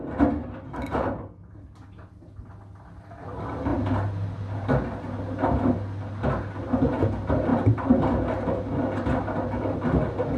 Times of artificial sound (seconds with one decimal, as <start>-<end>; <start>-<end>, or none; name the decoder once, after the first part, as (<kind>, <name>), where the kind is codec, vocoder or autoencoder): none